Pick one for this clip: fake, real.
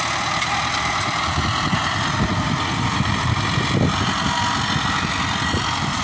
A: real